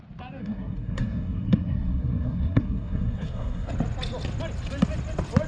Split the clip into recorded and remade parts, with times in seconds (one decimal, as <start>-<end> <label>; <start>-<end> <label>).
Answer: 0.0-0.4 recorded; 0.4-3.7 remade; 3.7-5.5 recorded